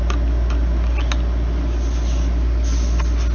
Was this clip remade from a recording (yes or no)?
no